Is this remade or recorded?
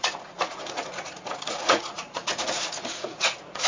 remade